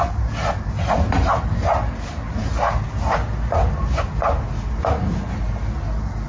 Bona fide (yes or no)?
yes